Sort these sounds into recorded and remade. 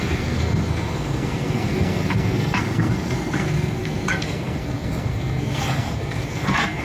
remade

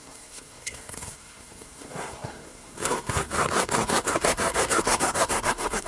remade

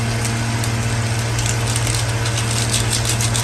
recorded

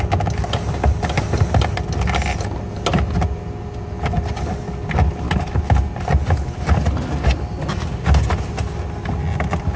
recorded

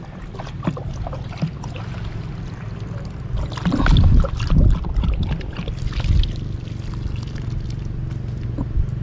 recorded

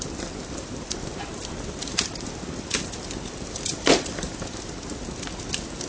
recorded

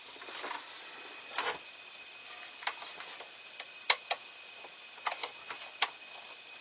recorded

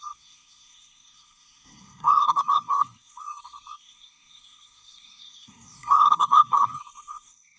remade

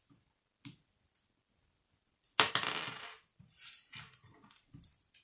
recorded